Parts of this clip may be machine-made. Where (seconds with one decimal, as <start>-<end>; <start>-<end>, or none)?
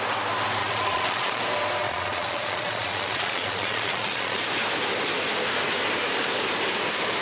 0.6-1.4; 1.8-4.4